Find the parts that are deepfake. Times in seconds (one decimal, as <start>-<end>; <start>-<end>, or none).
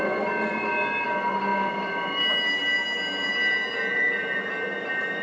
none